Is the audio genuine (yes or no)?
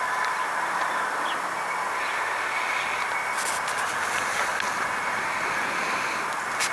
yes